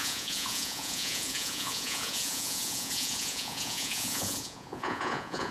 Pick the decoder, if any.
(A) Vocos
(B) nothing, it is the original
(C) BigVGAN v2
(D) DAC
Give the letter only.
A